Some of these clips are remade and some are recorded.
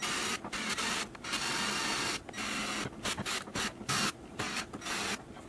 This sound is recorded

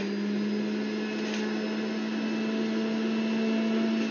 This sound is recorded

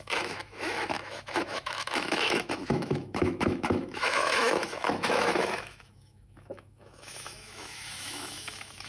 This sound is remade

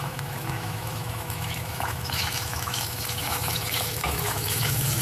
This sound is remade